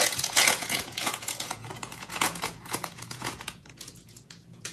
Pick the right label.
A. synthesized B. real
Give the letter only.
A